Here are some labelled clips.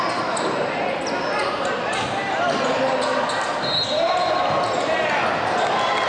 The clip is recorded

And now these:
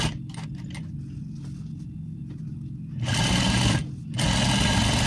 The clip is recorded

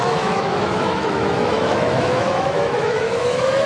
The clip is remade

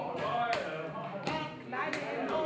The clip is recorded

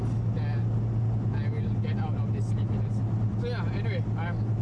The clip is recorded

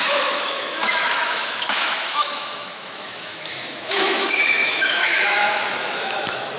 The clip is remade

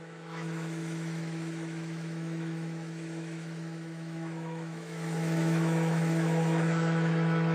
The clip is remade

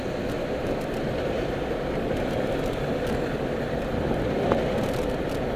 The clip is recorded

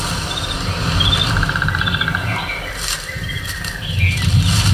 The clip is recorded